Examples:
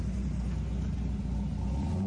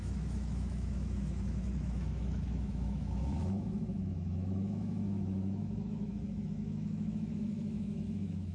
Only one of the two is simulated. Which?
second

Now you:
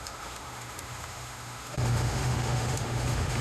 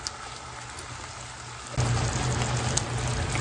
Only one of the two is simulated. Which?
first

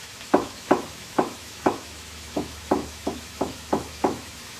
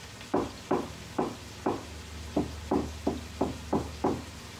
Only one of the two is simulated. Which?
first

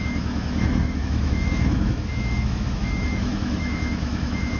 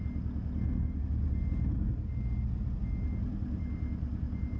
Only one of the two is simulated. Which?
first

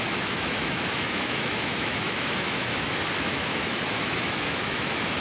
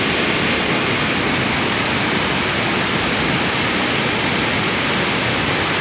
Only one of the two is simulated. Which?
first